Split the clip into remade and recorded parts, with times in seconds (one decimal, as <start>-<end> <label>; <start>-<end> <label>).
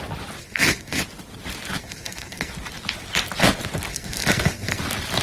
0.0-0.4 recorded; 0.4-1.0 remade; 1.0-1.8 recorded; 1.8-2.5 remade; 2.5-3.9 recorded; 3.9-4.8 remade; 4.8-5.2 recorded